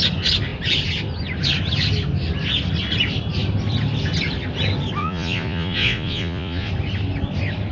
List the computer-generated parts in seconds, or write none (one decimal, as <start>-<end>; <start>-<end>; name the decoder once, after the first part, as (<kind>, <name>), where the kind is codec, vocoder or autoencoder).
5.0-6.7 (vocoder, Vocos)